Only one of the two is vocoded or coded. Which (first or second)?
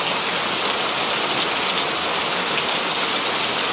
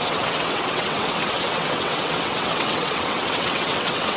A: second